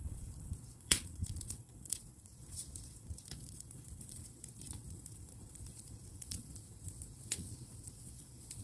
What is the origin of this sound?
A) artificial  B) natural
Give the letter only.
A